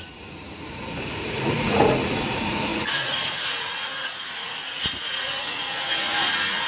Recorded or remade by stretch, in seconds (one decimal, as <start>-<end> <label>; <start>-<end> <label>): 0.0-6.7 remade